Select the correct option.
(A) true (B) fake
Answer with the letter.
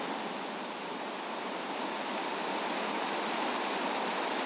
A